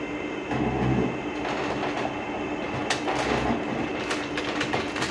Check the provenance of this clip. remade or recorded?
recorded